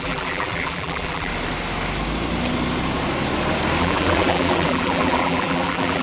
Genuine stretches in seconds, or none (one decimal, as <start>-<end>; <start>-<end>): 1.3-3.8